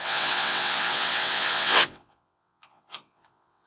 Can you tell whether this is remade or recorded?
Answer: remade